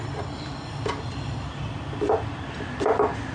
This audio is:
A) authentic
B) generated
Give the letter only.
A